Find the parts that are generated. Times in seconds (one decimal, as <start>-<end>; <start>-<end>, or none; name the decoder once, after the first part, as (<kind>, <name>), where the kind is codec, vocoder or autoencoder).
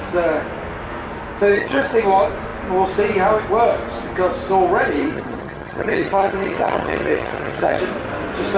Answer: 1.5-2.0 (vocoder, HiFi-GAN); 5.0-7.8